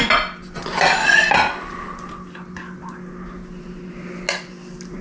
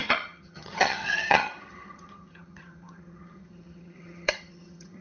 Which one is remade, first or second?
second